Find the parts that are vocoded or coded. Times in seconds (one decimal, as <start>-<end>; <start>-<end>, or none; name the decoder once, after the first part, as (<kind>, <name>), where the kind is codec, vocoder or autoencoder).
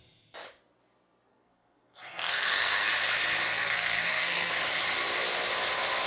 1.3-2.9 (codec, SNAC); 3.5-4.5